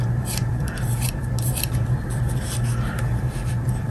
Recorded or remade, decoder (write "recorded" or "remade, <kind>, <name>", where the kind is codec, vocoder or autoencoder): remade, vocoder, BigVGAN v2